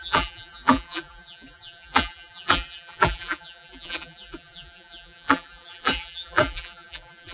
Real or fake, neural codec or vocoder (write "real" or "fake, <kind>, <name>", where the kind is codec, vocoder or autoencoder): fake, vocoder, BigVGAN v2